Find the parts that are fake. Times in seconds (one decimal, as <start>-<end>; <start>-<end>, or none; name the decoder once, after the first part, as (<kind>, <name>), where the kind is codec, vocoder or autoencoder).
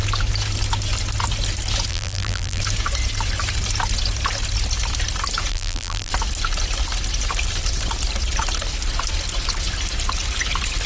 1.9-2.6 (vocoder, BigVGAN v2); 5.5-6.1